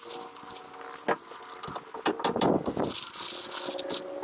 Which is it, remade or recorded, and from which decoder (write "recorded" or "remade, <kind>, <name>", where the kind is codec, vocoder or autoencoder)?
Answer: recorded